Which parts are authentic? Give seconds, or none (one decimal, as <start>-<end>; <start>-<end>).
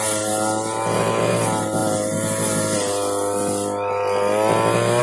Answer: 0.0-5.0